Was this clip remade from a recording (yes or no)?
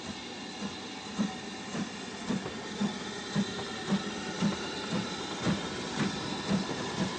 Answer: no